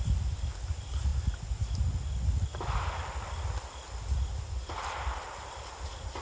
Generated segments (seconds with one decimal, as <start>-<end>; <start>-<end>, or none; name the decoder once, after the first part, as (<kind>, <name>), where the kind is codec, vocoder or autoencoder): none